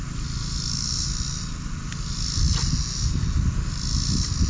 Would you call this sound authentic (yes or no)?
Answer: yes